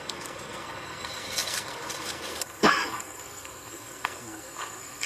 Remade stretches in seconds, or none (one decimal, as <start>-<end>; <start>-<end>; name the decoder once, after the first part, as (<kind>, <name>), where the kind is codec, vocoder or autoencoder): 0.0-5.1 (codec, SNAC)